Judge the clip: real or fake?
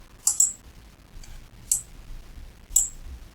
real